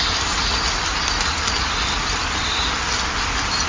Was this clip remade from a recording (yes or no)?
no